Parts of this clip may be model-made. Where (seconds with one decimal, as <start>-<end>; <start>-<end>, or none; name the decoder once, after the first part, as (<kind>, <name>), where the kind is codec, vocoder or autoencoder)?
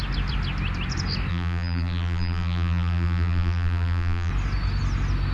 1.3-4.3 (vocoder, BigVGAN v2)